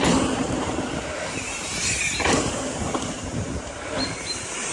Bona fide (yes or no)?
no